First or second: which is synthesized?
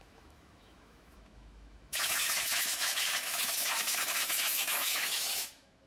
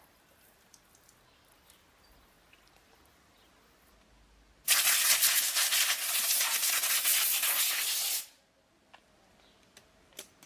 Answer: first